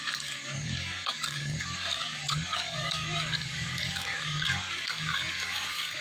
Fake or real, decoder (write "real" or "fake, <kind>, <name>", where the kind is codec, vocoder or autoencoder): fake, codec, DAC